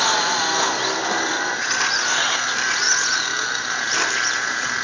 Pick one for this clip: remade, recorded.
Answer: recorded